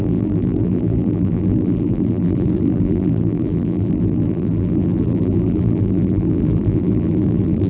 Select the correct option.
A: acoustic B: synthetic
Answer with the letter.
B